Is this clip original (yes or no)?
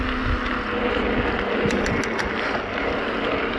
yes